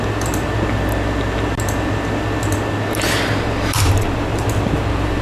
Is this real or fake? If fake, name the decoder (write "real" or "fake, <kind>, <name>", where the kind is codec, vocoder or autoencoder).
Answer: real